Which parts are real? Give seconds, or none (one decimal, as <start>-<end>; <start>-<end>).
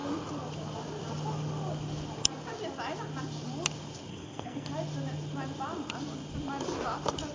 0.0-4.1; 4.7-7.3